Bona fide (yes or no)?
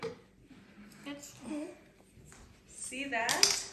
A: yes